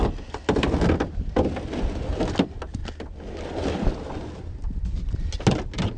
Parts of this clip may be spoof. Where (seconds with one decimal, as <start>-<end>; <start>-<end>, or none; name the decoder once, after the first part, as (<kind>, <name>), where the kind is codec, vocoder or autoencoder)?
none